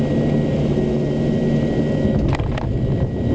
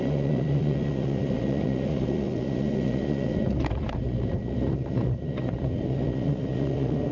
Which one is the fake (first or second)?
second